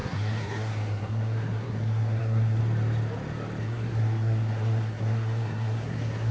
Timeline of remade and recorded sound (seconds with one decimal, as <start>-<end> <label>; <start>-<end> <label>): 0.0-2.6 remade; 2.6-3.6 recorded; 3.6-6.3 remade